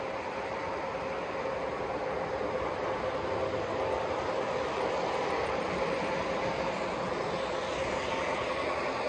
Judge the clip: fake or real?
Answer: real